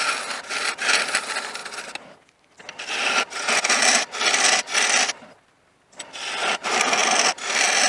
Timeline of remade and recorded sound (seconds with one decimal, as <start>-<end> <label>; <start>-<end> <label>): 0.0-7.9 recorded